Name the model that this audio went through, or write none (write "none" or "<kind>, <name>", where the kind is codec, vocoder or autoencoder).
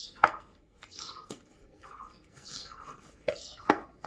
codec, SNAC